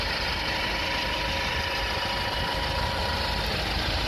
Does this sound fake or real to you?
real